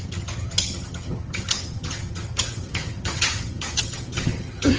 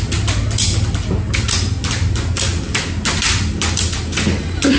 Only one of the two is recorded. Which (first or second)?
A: second